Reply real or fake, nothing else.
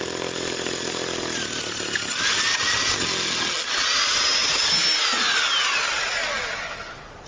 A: real